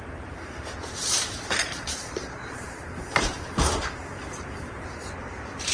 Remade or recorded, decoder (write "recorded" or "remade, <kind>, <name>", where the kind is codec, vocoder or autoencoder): remade, vocoder, BigVGAN v2